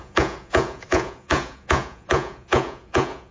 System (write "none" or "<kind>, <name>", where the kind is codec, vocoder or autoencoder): vocoder, Vocos